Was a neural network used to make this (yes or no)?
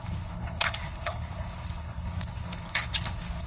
yes